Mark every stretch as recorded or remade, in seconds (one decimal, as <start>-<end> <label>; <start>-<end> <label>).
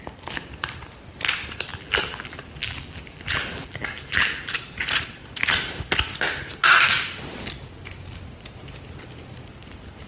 0.0-1.7 recorded; 1.7-4.9 remade; 4.9-10.1 recorded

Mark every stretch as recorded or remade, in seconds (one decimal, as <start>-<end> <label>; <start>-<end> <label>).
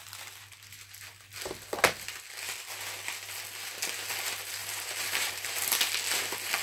0.0-4.6 recorded; 4.6-5.6 remade; 5.6-6.6 recorded